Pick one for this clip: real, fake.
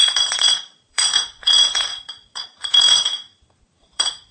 fake